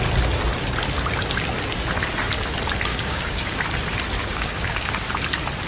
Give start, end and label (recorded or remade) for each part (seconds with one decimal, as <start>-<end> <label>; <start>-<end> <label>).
0.0-2.9 recorded; 2.9-3.6 remade; 3.6-4.2 recorded; 4.2-4.9 remade; 4.9-5.7 recorded